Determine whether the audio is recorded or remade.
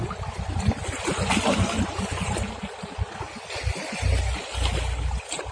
recorded